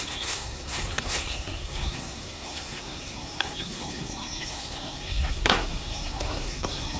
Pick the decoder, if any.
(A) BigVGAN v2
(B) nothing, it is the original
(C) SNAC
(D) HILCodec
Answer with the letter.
C